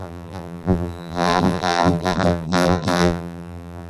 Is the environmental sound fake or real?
fake